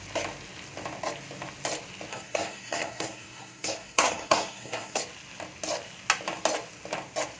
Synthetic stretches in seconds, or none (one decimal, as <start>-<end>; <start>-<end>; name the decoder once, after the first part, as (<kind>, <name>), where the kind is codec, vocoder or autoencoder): 2.1-5.0 (codec, SNAC)

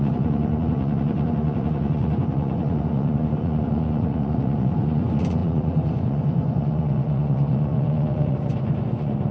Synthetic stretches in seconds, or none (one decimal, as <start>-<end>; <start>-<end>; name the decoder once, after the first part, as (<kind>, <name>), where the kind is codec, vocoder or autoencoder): 0.0-9.3 (vocoder, Vocos)

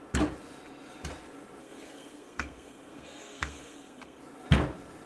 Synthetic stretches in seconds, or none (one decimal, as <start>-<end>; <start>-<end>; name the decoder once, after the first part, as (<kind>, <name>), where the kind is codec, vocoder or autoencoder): 1.6-4.2 (codec, SNAC)